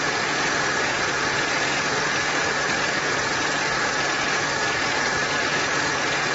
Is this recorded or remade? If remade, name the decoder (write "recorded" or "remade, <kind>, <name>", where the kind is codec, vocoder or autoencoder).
remade, vocoder, Vocos